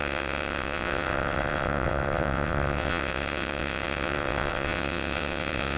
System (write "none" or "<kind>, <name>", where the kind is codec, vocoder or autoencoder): vocoder, WaveNeXt